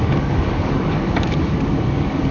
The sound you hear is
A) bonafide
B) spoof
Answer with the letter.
B